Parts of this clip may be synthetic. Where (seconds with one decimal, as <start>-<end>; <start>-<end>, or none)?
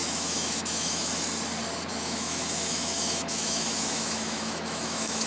0.0-1.1; 1.9-5.3